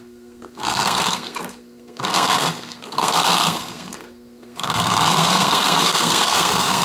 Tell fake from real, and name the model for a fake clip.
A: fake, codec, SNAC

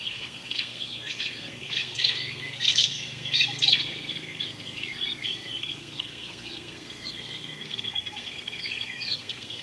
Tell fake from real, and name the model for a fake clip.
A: fake, codec, SNAC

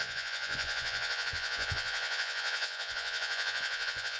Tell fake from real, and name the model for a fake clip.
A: fake, vocoder, Vocos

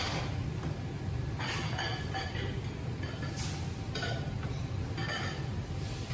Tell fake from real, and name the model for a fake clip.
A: real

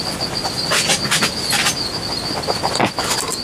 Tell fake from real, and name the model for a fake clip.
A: fake, vocoder, BigVGAN v2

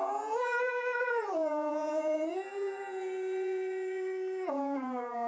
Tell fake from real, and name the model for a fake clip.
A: fake, vocoder, Vocos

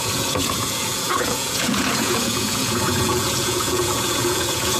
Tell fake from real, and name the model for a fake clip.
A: fake, vocoder, Vocos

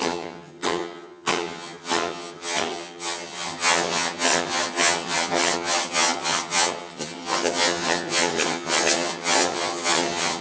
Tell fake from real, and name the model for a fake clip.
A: fake, vocoder, HiFi-GAN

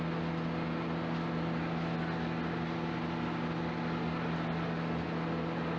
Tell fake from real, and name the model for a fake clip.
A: real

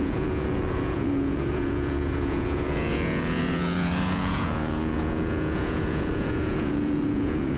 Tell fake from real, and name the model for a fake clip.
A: fake, vocoder, Vocos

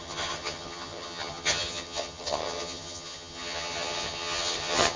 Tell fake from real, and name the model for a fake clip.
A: fake, vocoder, HiFi-GAN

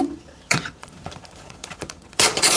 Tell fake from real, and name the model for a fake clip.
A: fake, vocoder, Vocos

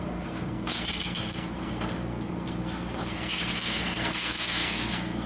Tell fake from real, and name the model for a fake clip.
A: fake, codec, SNAC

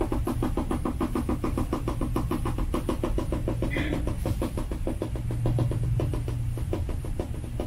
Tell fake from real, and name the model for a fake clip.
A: real